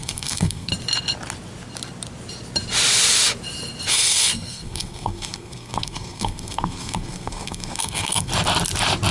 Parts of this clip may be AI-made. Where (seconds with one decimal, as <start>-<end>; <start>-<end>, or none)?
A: 0.0-0.7; 3.9-8.3